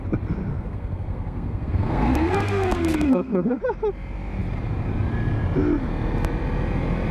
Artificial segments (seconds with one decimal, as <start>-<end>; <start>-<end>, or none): 0.5-3.6

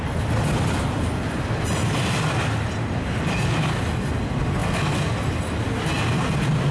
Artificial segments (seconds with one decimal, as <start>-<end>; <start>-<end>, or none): none

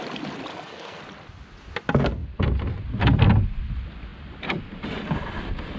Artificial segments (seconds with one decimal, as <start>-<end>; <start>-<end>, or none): 0.5-1.0

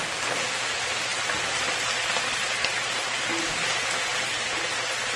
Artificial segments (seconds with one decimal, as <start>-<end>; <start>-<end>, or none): 1.1-3.4; 4.1-5.2

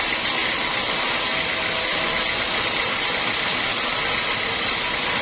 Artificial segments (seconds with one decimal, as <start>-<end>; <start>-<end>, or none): none

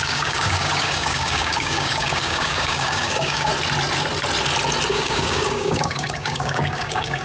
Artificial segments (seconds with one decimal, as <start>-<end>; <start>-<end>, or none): 0.0-3.5; 4.9-7.2